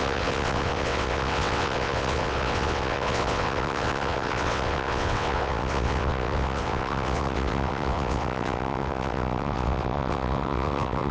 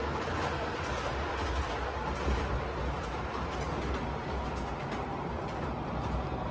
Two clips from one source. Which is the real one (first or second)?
second